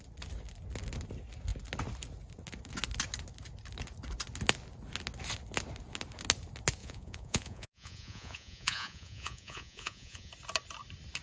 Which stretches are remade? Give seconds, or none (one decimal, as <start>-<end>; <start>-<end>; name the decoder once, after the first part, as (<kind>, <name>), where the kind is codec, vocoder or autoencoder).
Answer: 6.8-10.3 (vocoder, Vocos)